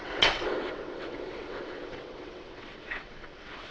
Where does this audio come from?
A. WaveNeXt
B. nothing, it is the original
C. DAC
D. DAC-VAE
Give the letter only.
A